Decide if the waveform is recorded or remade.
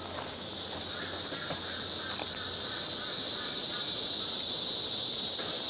recorded